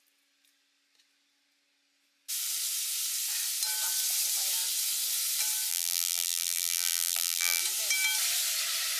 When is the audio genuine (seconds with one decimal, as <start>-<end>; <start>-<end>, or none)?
0.0-5.7; 7.6-9.0